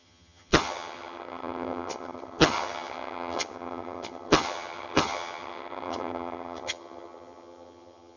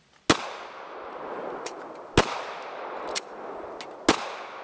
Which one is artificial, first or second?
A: first